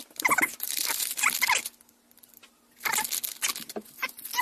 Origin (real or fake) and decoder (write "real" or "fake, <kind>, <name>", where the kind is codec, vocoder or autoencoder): real